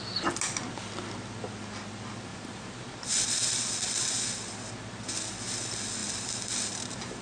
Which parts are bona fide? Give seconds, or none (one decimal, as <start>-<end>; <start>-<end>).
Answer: 0.0-2.3; 2.9-7.2